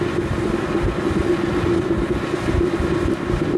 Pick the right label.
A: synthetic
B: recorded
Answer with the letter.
B